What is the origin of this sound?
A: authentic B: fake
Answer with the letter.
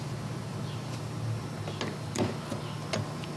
A